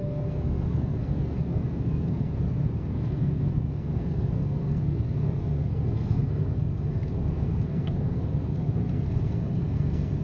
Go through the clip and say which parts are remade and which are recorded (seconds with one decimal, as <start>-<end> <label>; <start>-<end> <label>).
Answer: 0.0-10.2 remade